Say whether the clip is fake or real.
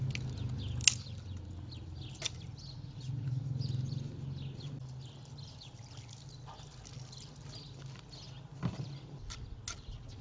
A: real